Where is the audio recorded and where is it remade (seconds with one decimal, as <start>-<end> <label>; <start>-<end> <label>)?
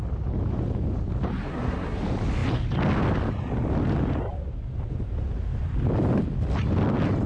0.0-1.5 recorded; 1.5-2.0 remade; 2.0-7.3 recorded